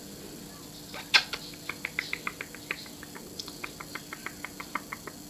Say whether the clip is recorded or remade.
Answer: recorded